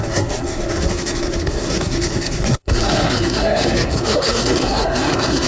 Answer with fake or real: fake